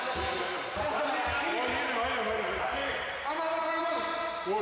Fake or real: real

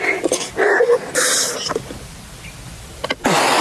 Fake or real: real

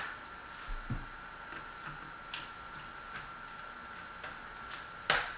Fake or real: real